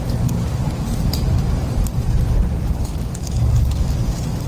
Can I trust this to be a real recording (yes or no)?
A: yes